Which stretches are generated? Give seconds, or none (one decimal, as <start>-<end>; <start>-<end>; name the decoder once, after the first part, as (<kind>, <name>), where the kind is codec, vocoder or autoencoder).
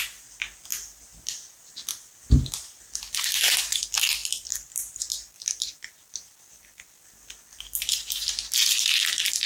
4.2-7.2 (vocoder, BigVGAN v2)